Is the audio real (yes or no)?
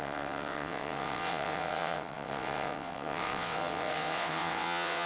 no